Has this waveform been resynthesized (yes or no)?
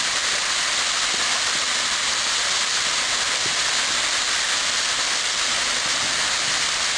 no